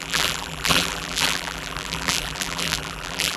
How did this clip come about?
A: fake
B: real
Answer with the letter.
A